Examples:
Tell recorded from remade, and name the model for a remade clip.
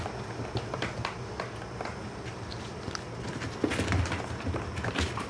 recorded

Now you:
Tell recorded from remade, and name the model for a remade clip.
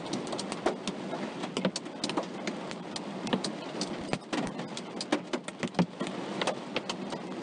recorded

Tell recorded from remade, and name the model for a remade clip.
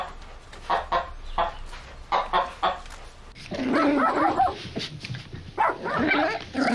recorded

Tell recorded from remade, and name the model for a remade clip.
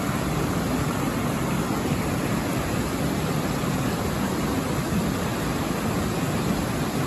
recorded